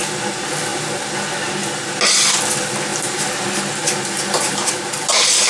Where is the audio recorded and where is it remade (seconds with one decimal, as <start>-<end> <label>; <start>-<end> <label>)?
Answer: 0.0-2.9 recorded; 2.9-4.7 remade; 4.7-5.5 recorded